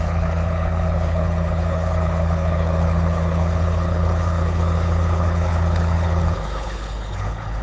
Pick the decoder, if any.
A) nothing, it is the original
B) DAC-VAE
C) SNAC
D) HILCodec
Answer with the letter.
D